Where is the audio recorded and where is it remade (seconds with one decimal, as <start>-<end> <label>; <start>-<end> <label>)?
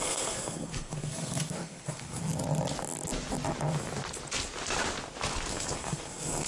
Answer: 0.0-2.2 remade; 2.2-5.5 recorded; 5.5-6.5 remade